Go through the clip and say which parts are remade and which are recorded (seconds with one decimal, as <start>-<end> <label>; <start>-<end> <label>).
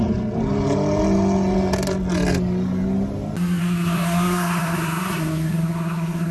0.0-3.6 recorded; 3.6-6.3 remade